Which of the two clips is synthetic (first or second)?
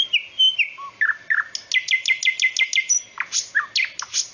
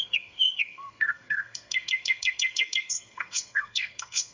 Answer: second